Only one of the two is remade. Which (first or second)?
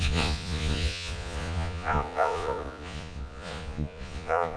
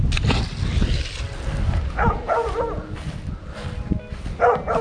first